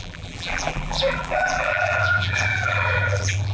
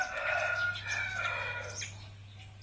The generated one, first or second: first